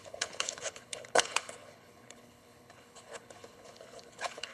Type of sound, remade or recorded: remade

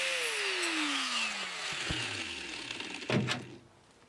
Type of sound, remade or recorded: recorded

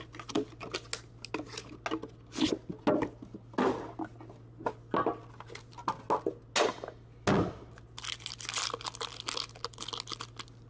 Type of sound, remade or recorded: recorded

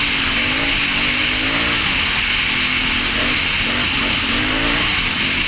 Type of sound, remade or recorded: recorded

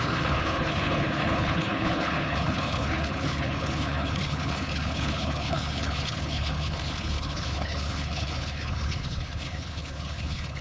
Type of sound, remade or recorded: remade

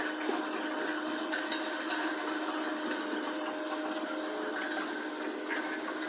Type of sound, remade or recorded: recorded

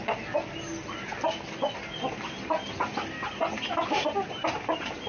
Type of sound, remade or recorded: recorded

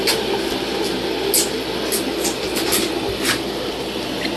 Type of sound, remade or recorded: recorded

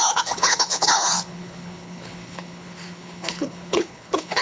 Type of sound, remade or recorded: remade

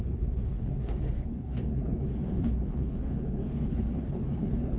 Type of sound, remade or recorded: remade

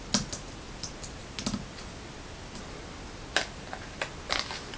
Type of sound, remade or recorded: recorded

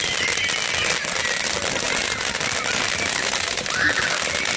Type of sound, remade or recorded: recorded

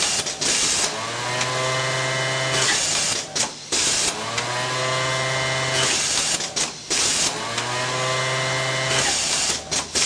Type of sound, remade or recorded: recorded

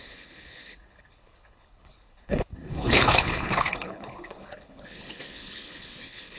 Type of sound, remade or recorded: remade